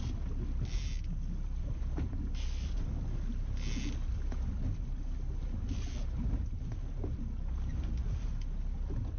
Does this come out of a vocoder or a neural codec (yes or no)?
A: no